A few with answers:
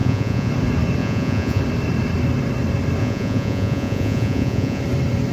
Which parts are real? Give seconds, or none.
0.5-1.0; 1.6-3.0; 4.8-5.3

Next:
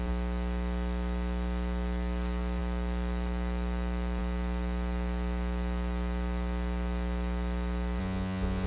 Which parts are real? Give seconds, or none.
0.0-8.0

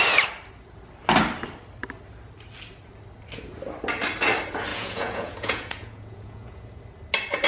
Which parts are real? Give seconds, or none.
0.0-4.7; 6.8-7.5